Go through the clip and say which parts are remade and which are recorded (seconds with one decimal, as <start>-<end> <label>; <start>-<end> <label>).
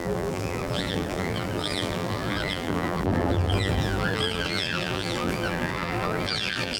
0.0-6.8 remade